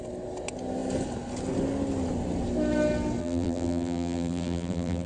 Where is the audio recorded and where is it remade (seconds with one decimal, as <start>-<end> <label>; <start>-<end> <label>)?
0.0-3.2 recorded; 3.2-5.1 remade

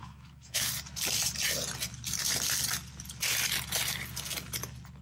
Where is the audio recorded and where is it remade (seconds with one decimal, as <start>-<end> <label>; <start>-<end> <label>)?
0.0-0.7 remade; 0.7-5.0 recorded

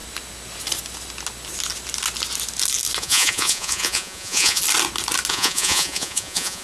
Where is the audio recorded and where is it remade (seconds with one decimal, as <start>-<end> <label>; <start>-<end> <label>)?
0.0-3.0 recorded; 3.0-4.6 remade; 4.6-5.3 recorded; 5.3-6.6 remade

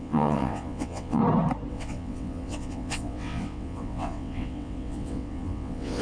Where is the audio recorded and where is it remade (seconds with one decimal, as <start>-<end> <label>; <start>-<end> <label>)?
0.0-1.2 remade; 1.2-1.7 recorded; 1.7-6.0 remade

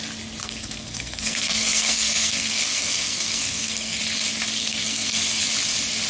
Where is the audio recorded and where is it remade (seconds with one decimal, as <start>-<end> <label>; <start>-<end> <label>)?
0.0-0.4 recorded; 0.4-4.0 remade; 4.0-4.6 recorded; 4.6-5.4 remade; 5.4-6.1 recorded

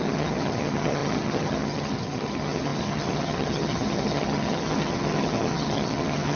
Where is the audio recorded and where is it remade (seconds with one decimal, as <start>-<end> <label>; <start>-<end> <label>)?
0.0-6.4 remade

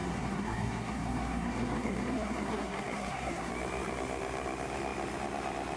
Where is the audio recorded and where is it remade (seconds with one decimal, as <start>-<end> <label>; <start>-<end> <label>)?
0.0-3.5 remade; 3.5-5.8 recorded